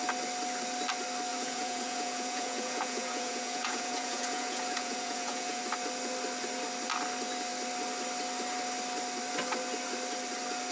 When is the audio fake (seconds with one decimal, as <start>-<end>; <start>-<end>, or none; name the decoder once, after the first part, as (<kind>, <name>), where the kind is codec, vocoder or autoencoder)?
1.3-5.6 (vocoder, Vocos)